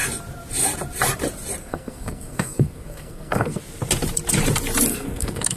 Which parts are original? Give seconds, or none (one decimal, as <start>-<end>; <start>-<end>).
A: 0.0-1.6; 3.6-4.9